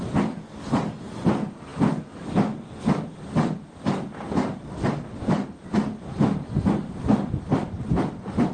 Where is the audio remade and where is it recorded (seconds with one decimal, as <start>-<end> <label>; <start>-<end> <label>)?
0.0-8.5 recorded